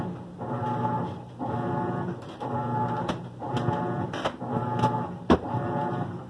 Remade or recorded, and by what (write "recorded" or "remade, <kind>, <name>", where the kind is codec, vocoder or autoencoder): recorded